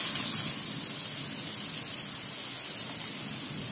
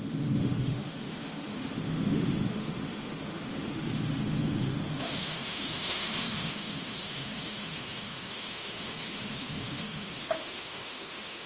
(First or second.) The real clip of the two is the first